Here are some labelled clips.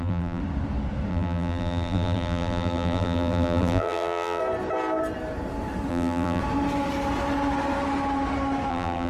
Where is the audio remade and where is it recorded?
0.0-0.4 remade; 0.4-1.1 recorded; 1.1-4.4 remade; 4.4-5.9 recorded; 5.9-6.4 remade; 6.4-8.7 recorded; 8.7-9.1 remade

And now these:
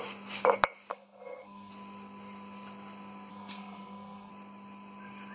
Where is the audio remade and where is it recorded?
0.0-0.9 recorded; 0.9-1.7 remade; 1.7-3.3 recorded; 3.3-4.3 remade; 4.3-5.3 recorded

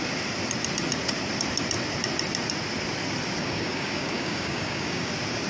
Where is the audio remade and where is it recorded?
0.0-3.4 recorded; 3.4-5.1 remade; 5.1-5.5 recorded

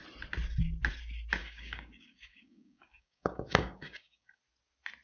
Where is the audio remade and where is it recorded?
0.0-1.4 recorded; 1.4-4.4 remade; 4.4-5.0 recorded

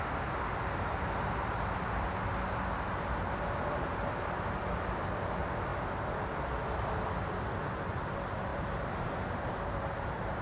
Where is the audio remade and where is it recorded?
0.0-5.7 recorded; 5.7-6.4 remade; 6.4-8.5 recorded; 8.5-10.4 remade

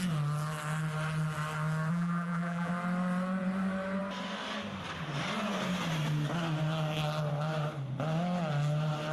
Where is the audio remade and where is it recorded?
0.0-1.9 recorded; 1.9-2.7 remade; 2.7-9.1 recorded

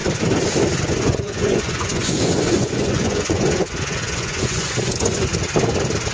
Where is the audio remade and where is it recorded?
0.0-0.9 recorded; 0.9-5.3 remade; 5.3-6.1 recorded